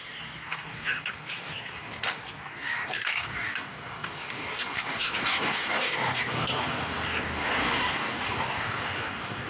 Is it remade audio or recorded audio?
remade